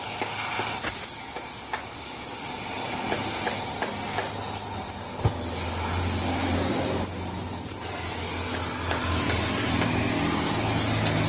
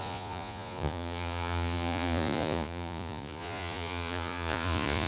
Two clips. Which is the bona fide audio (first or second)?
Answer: first